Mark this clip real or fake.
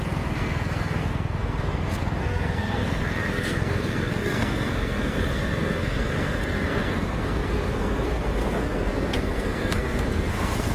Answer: fake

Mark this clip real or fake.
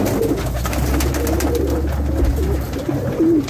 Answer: real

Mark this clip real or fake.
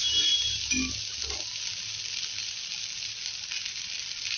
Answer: real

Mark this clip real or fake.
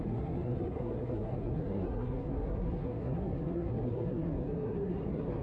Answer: fake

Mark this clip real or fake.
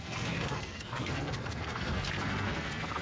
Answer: fake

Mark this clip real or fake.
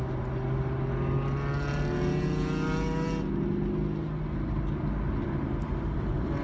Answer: real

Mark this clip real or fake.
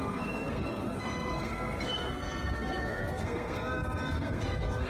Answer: fake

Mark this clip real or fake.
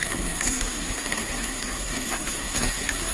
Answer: fake